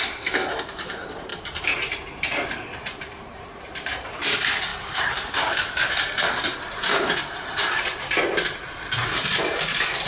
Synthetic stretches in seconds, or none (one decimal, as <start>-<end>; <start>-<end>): 0.0-10.1